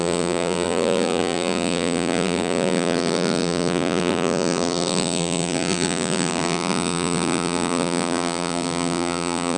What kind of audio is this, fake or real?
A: fake